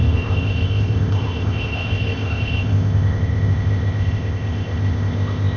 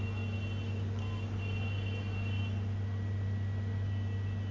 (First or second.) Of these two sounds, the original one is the second